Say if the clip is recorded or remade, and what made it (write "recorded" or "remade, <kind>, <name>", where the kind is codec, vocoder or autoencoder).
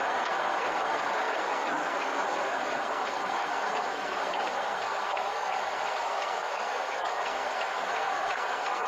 remade, codec, SNAC